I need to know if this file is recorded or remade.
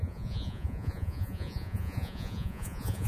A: remade